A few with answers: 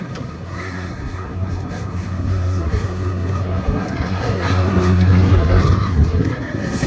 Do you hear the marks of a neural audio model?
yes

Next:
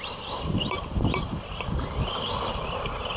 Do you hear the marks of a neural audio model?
yes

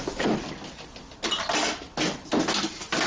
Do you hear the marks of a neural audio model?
no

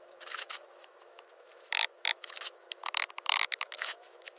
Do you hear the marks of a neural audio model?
yes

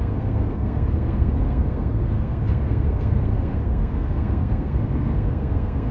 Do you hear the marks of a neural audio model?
yes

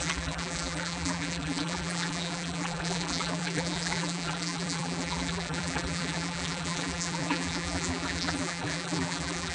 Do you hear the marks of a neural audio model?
yes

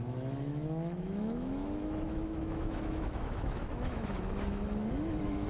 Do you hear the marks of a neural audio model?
yes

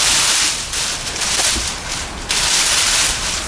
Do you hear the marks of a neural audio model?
yes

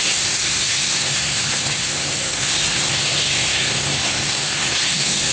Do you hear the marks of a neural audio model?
yes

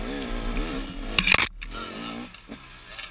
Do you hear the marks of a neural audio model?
no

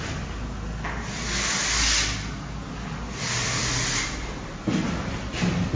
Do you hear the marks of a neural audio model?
no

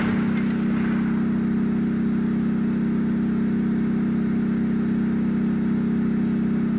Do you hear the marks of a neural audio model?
no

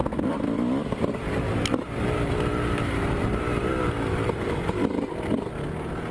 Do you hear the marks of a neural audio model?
no